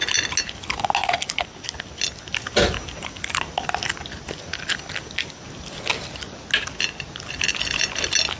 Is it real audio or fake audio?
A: real